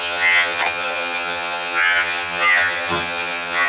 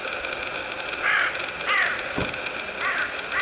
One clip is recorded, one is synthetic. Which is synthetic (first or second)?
first